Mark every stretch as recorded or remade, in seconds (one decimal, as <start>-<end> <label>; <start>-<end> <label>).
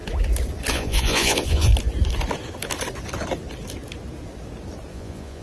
0.0-0.7 recorded; 0.7-1.7 remade; 1.7-4.9 recorded; 4.9-5.4 remade